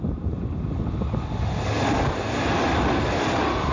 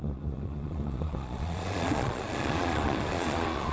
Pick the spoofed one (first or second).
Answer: second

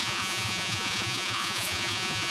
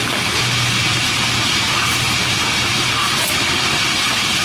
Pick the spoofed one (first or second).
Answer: first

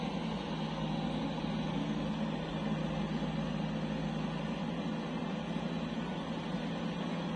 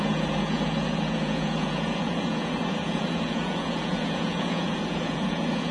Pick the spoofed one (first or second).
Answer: second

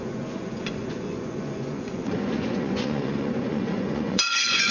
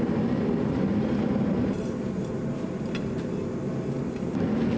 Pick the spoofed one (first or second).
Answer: first